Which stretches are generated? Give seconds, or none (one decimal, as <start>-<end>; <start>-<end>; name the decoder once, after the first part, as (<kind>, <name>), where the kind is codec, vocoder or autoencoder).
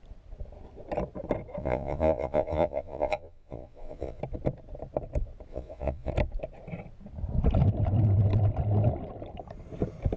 1.6-4.2 (vocoder, Vocos); 5.5-6.1